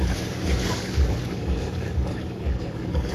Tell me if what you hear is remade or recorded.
remade